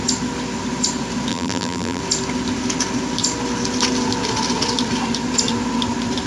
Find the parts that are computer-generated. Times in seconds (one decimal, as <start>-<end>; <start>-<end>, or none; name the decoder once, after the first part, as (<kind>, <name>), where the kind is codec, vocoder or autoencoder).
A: 1.3-2.0 (vocoder, BigVGAN v2)